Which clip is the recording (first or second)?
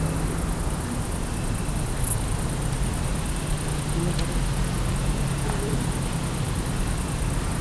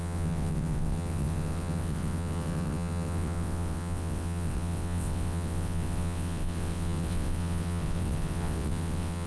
first